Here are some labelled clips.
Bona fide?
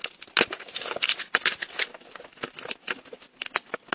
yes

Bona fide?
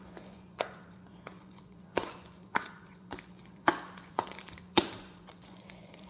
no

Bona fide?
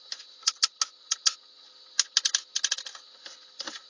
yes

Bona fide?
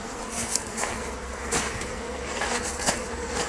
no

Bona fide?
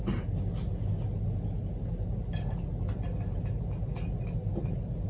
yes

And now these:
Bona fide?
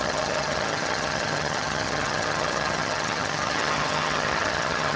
no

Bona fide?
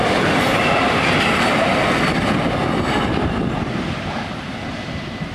yes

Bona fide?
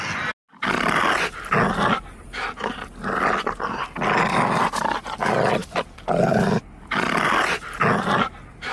yes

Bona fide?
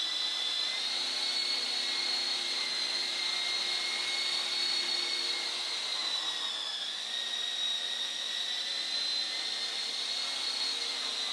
yes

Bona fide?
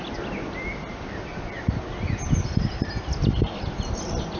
yes